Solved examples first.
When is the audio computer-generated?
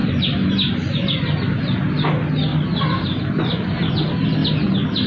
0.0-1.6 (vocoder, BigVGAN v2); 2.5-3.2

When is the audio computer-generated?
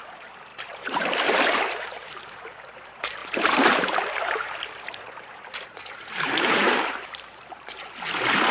0.0-8.5 (vocoder, BigVGAN v2)